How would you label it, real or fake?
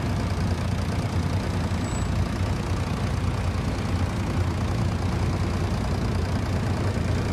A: real